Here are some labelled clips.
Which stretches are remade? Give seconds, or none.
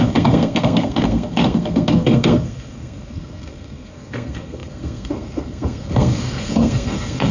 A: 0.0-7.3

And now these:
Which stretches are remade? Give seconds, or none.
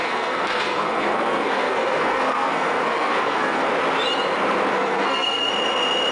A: 0.0-3.7; 4.7-5.5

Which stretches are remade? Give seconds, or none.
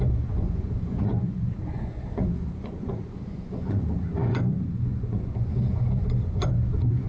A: 0.0-7.1